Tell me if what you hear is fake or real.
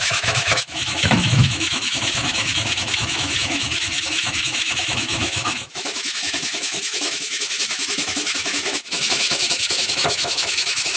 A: fake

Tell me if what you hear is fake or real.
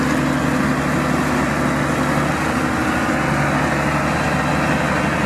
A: real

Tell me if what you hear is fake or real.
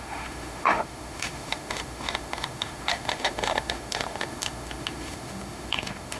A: fake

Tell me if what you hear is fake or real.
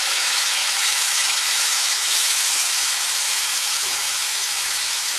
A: fake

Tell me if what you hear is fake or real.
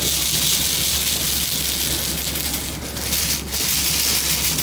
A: real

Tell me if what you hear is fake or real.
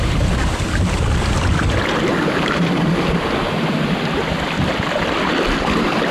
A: real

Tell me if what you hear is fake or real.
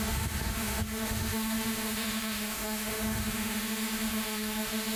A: fake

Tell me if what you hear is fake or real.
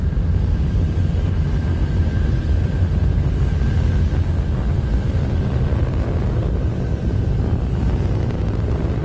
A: real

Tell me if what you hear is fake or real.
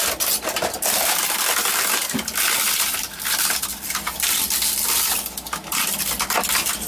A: real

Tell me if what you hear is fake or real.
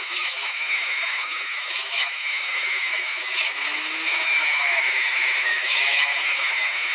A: fake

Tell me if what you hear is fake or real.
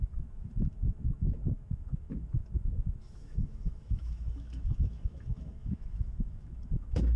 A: fake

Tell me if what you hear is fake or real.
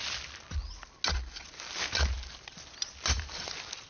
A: real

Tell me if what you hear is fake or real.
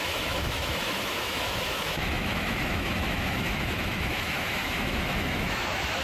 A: fake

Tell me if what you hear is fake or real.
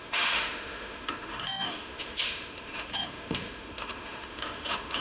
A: fake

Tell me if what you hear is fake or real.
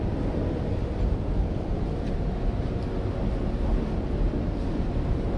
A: real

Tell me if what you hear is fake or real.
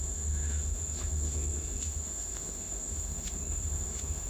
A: fake